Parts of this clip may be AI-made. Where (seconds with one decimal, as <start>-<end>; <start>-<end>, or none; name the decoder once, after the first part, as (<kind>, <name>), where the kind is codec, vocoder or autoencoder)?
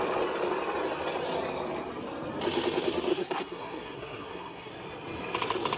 3.1-4.7 (codec, SNAC)